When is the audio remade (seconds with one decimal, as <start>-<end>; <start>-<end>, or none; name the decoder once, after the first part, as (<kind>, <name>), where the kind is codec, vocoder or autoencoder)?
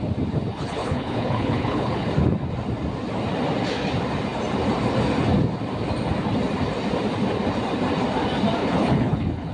0.5-2.1 (codec, HILCodec); 8.6-9.5